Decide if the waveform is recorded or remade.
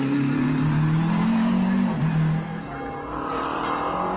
recorded